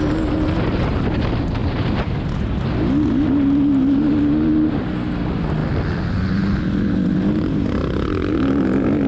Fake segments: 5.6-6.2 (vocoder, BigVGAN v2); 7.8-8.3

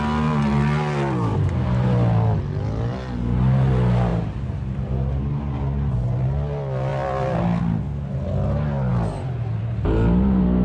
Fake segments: 4.1-4.8 (vocoder, BigVGAN v2)

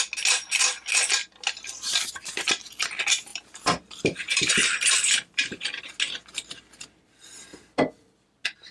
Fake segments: 3.3-5.8 (vocoder, BigVGAN v2)

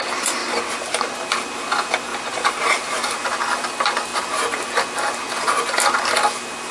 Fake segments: 0.4-1.1 (vocoder, BigVGAN v2); 2.1-3.2

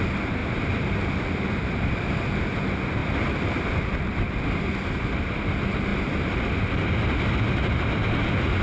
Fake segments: 0.4-2.6 (vocoder, BigVGAN v2); 3.0-4.5

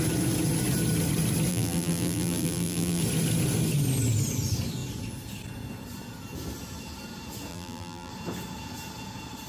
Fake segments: 1.5-3.0 (vocoder, BigVGAN v2); 7.5-8.1

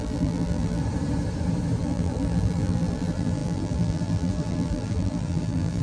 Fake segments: 0.0-0.8 (vocoder, BigVGAN v2); 1.8-5.8

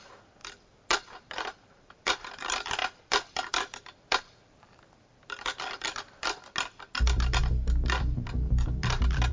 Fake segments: 0.4-1.9 (vocoder, BigVGAN v2); 2.8-6.4